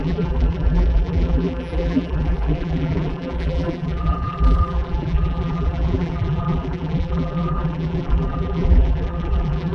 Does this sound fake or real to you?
fake